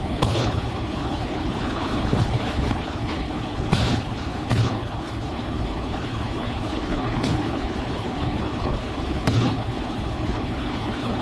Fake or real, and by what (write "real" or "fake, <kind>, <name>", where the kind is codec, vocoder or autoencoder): fake, codec, HILCodec